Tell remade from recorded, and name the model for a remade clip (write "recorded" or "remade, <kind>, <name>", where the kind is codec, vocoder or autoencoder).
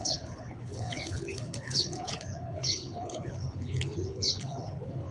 remade, codec, HILCodec